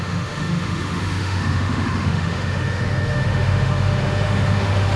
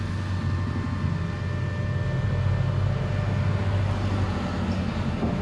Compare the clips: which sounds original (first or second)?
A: second